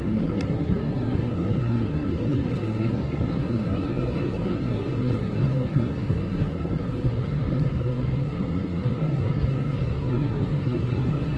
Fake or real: fake